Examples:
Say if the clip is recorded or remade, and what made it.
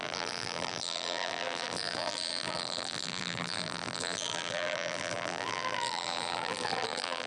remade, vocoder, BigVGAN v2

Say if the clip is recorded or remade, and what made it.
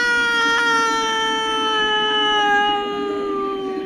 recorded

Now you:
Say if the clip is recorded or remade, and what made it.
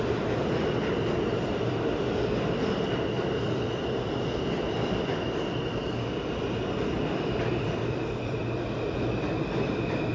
remade, vocoder, BigVGAN v2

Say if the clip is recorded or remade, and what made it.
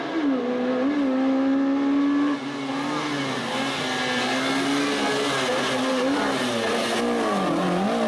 recorded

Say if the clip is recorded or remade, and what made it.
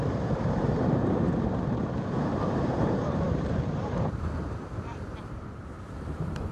remade, vocoder, BigVGAN v2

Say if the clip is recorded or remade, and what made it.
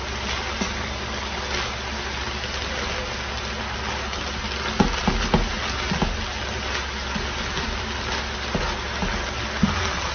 recorded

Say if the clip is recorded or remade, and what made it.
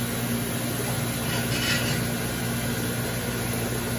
recorded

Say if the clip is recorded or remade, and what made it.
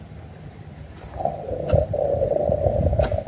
remade, vocoder, BigVGAN v2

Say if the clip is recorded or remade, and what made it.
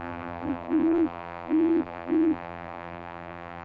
remade, vocoder, BigVGAN v2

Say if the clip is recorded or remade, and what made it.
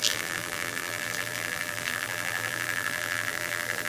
remade, vocoder, BigVGAN v2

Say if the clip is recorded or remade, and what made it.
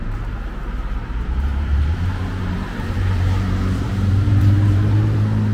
remade, vocoder, BigVGAN v2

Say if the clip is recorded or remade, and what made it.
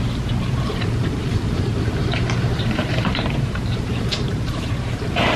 remade, vocoder, BigVGAN v2